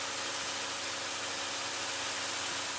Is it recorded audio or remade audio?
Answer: recorded